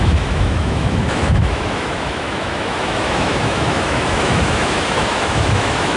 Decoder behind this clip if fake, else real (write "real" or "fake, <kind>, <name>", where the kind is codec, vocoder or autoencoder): fake, autoencoder, DAC-VAE